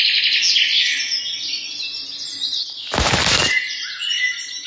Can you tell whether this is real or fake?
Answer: real